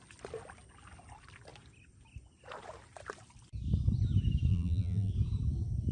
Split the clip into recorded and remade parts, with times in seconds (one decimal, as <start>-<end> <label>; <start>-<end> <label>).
0.0-4.5 recorded; 4.5-5.1 remade; 5.1-5.9 recorded